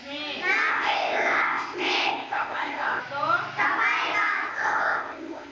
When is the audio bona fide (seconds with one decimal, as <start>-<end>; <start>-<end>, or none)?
0.0-0.7; 3.0-4.5